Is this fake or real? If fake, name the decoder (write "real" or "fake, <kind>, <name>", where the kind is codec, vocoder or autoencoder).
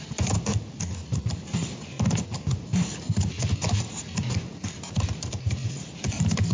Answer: real